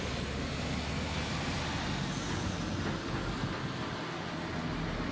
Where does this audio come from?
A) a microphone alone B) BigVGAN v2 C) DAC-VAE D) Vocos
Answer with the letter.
A